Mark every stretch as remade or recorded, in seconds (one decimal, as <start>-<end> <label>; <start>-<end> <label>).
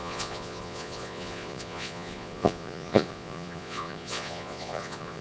0.0-5.2 remade